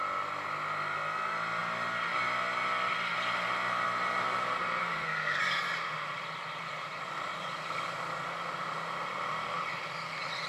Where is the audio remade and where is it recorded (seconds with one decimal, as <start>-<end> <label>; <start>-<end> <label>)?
0.0-4.8 recorded; 4.8-5.4 remade; 5.4-10.5 recorded